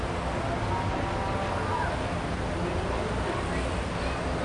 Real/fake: real